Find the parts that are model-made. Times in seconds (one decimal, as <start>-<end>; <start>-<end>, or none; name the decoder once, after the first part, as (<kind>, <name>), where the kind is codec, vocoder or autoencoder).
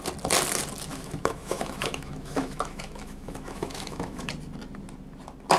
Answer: 0.9-4.3 (autoencoder, DAC-VAE)